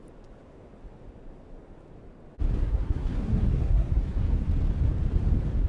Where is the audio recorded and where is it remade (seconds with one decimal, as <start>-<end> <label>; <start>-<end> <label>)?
0.0-2.6 recorded; 2.6-4.5 remade; 4.5-5.7 recorded